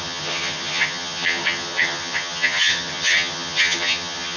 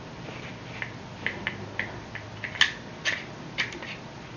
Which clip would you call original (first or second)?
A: second